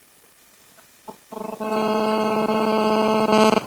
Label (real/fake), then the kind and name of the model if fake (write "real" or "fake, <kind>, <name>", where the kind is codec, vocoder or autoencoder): fake, vocoder, BigVGAN v2